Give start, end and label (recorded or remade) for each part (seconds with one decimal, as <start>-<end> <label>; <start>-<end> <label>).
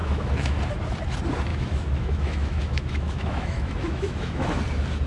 0.0-0.6 remade; 0.6-1.5 recorded; 1.5-4.6 remade; 4.6-5.1 recorded